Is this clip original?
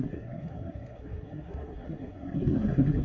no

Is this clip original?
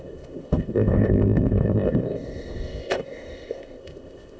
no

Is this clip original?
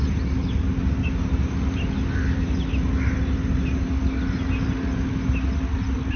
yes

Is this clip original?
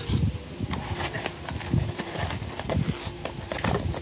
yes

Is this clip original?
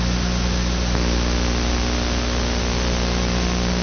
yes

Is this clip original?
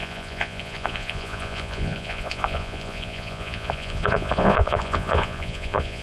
no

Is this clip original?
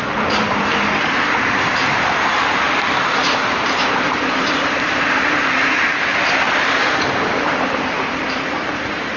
no